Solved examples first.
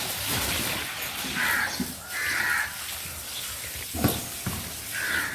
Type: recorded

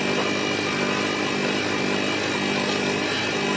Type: recorded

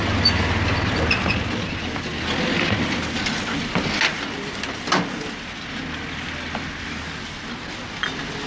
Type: recorded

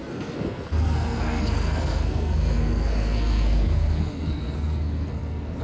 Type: remade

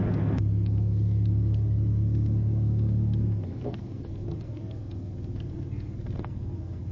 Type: remade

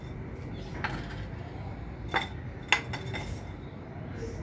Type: recorded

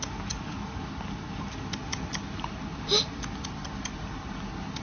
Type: recorded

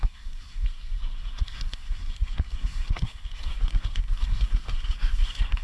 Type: remade